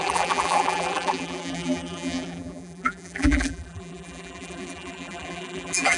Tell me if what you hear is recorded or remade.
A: remade